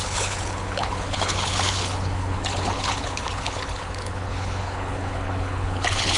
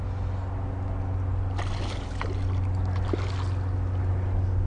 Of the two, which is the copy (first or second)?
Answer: first